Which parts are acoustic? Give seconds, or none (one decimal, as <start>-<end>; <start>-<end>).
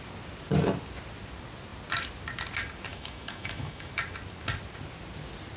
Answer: 0.0-2.9; 3.9-5.6